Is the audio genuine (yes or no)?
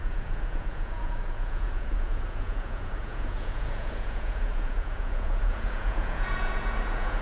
no